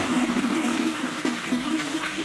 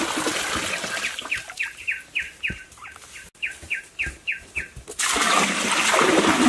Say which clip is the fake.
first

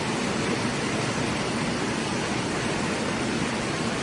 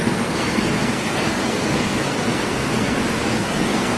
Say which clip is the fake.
second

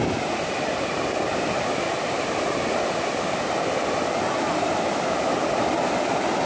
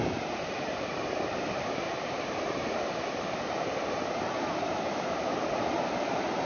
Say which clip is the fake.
second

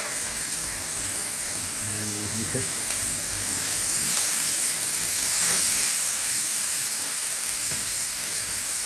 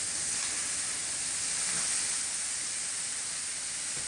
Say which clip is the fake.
first